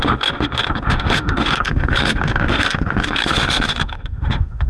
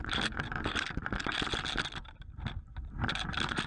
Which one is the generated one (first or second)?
first